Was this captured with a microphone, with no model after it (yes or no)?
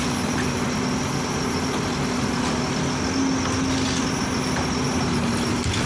yes